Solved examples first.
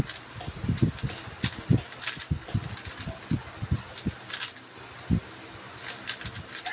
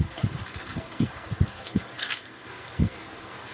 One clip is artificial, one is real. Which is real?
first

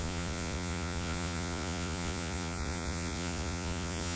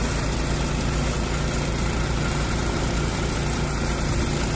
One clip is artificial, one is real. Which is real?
second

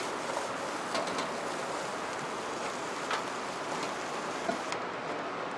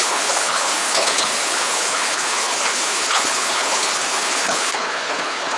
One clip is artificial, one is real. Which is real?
first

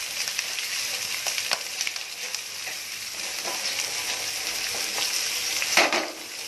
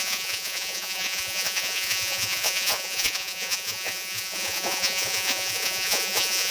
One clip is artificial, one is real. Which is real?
first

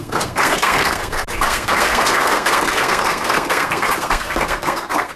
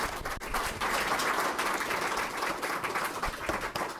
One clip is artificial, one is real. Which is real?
second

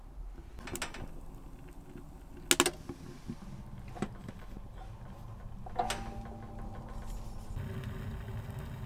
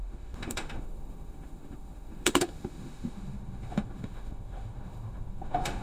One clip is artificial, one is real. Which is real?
first